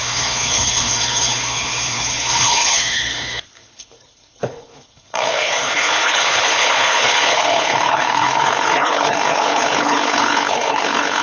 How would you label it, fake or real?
fake